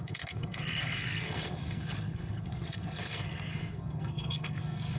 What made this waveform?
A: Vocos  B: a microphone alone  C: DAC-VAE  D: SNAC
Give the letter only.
D